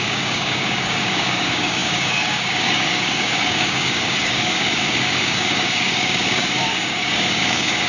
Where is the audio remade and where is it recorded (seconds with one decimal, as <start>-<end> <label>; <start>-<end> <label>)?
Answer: 0.0-7.9 remade